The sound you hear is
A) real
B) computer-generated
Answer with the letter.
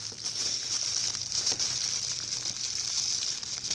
A